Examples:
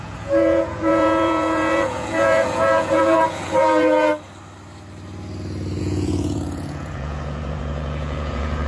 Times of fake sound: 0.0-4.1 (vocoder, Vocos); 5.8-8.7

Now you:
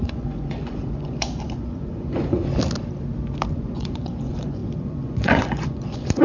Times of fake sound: 0.0-2.4 (vocoder, Vocos); 3.5-6.2

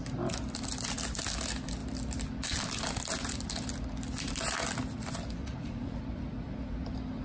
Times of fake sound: 5.4-6.0 (vocoder, Vocos)

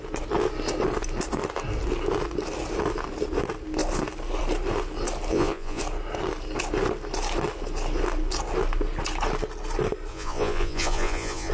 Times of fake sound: 5.3-5.8 (vocoder, Vocos); 10.1-11.5

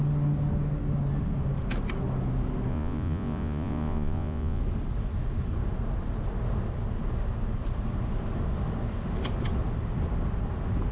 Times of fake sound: 2.7-4.6 (vocoder, Vocos)

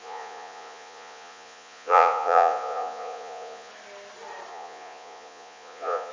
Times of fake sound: 0.0-3.7 (vocoder, Vocos); 4.5-6.1

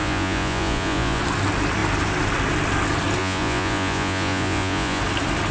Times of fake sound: 0.0-1.2 (vocoder, Vocos); 3.2-5.0

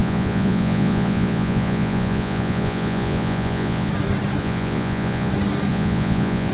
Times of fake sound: 0.0-3.9 (vocoder, Vocos); 4.4-5.3; 5.7-6.5